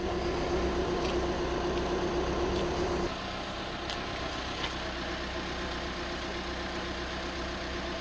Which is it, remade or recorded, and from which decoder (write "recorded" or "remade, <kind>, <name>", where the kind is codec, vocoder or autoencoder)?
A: recorded